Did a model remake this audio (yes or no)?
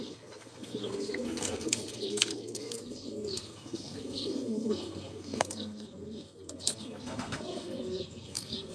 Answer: yes